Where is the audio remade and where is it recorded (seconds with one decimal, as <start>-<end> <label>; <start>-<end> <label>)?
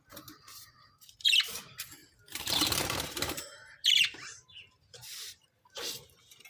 0.0-0.5 recorded; 0.5-1.6 remade; 1.6-2.0 recorded; 2.0-5.9 remade; 5.9-6.5 recorded